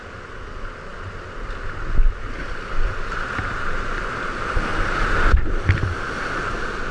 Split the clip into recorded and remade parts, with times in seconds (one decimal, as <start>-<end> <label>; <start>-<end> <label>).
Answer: 0.0-6.9 recorded